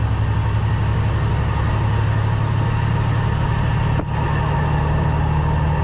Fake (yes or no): no